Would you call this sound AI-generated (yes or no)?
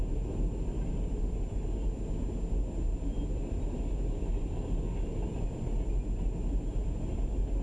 no